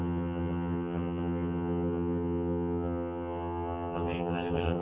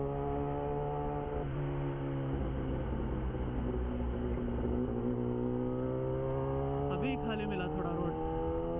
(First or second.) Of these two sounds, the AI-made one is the first